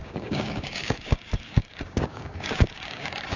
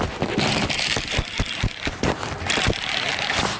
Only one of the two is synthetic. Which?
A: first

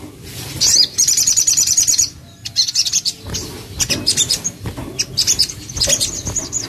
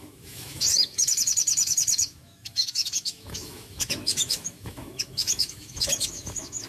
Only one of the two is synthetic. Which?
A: second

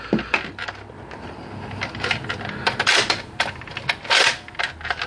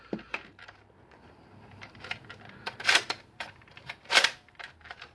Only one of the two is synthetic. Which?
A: second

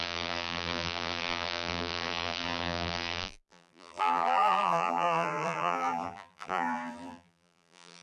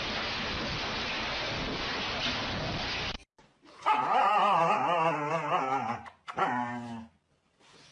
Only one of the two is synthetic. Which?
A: first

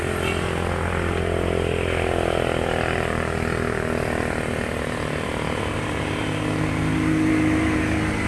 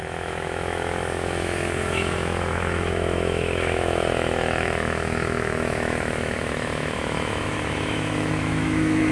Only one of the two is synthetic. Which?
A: second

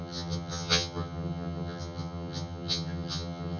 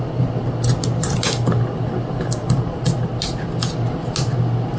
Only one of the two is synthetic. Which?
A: first